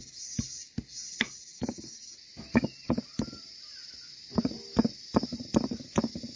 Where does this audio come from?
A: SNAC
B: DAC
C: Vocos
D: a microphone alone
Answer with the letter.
D